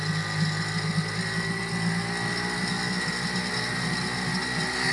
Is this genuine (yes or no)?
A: yes